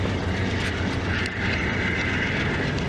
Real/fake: real